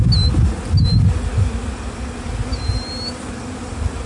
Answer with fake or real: real